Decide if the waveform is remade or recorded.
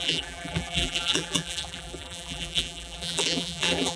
remade